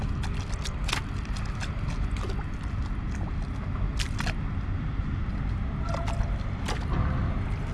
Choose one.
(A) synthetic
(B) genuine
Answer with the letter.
B